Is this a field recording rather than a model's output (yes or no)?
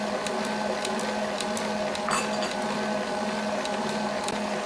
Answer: yes